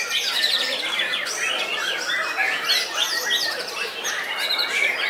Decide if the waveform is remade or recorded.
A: recorded